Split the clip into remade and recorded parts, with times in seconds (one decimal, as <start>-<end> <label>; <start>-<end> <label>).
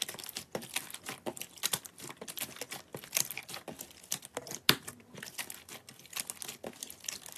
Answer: 0.0-7.4 recorded